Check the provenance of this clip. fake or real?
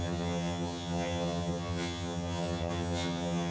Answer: fake